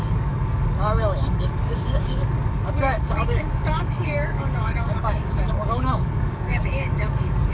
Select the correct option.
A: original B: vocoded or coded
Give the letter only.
B